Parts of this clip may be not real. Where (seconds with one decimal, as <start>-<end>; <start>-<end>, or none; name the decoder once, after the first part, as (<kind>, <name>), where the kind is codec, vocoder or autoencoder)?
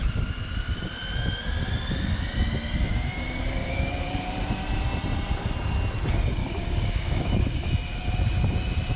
2.9-3.9 (codec, DAC); 6.4-7.7